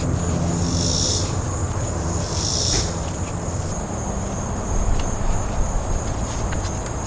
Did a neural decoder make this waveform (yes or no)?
no